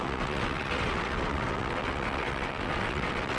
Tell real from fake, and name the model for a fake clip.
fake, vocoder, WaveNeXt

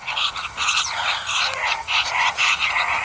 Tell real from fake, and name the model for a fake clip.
fake, vocoder, Vocos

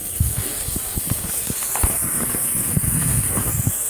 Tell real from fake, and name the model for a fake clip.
fake, codec, SNAC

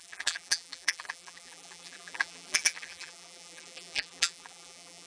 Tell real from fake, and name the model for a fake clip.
fake, vocoder, BigVGAN v2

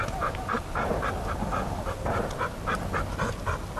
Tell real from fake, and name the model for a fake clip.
real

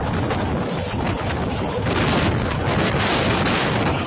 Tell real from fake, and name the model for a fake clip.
real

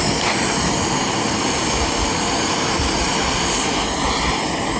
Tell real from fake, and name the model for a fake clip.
real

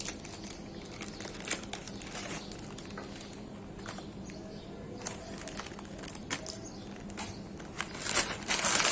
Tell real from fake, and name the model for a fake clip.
real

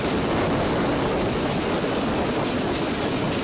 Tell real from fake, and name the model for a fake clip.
real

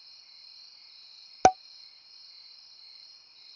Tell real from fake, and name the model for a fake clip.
real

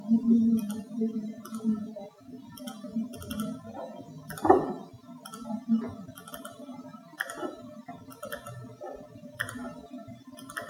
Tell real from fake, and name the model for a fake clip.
real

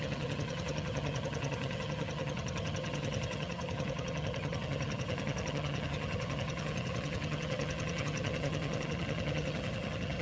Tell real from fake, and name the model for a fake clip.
fake, vocoder, HiFi-GAN